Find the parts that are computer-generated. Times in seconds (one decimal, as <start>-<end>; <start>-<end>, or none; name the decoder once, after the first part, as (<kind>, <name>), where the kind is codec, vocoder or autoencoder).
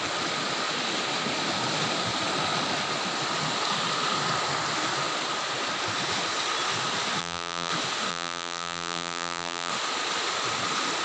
7.2-7.7 (vocoder, BigVGAN v2); 8.1-9.7